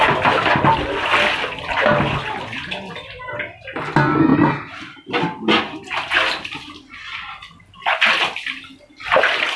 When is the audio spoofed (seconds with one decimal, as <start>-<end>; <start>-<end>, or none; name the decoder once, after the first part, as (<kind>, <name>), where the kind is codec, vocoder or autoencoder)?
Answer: none